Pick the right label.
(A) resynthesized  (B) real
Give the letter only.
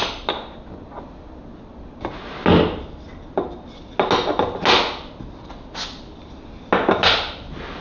B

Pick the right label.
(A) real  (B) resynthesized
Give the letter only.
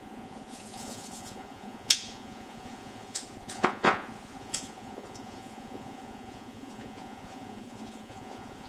B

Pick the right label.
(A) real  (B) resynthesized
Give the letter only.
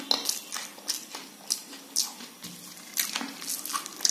A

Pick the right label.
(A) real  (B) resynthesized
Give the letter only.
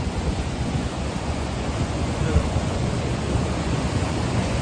B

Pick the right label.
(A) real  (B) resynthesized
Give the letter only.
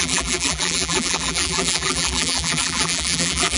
B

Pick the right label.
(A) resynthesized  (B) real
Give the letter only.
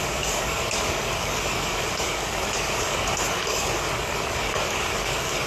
A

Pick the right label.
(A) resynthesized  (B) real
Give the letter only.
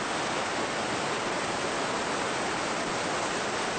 B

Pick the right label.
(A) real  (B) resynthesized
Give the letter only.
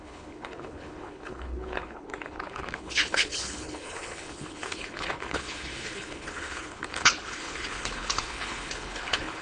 B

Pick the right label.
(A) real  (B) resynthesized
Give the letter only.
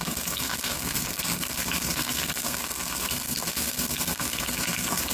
B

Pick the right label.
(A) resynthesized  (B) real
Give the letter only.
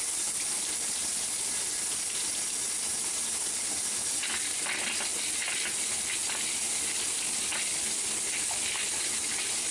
B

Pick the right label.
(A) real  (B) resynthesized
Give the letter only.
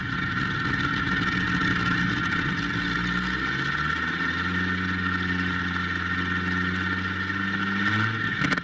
A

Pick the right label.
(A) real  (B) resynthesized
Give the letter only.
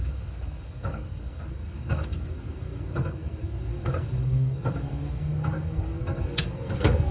B